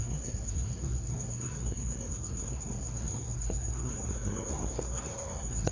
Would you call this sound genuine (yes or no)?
no